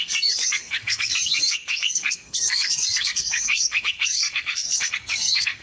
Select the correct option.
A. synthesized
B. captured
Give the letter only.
A